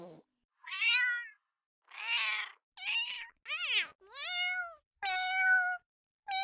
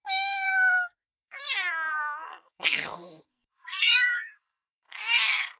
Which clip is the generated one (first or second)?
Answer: second